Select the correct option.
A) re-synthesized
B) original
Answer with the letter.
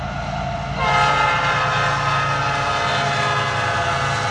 B